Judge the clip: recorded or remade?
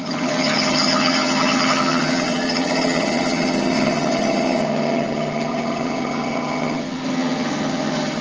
remade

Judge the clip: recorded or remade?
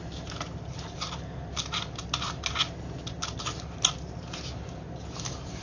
recorded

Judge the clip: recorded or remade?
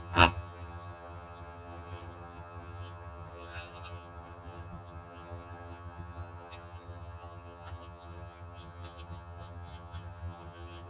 remade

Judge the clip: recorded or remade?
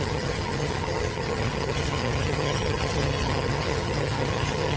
remade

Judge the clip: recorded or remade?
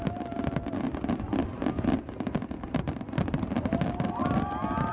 recorded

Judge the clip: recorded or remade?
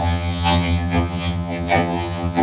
remade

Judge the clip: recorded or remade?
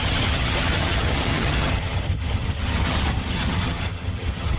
remade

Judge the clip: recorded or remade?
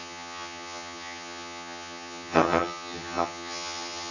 remade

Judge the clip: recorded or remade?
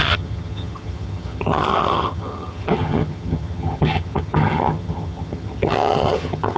remade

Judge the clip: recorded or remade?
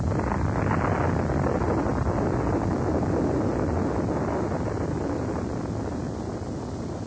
recorded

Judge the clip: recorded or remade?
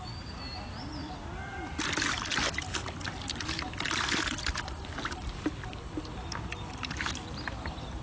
recorded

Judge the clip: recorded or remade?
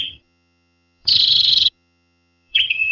remade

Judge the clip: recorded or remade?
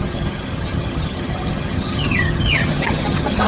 remade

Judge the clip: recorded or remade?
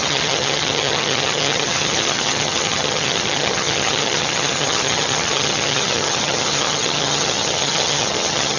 remade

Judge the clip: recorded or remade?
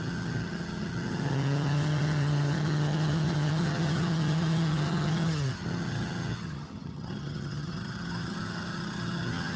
remade